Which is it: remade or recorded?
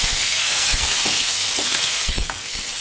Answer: remade